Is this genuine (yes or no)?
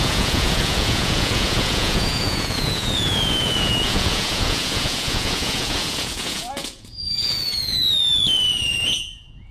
no